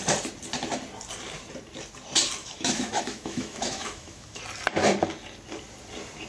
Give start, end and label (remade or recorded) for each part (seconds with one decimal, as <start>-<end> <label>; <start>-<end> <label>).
0.0-2.4 recorded; 2.4-4.4 remade; 4.4-6.3 recorded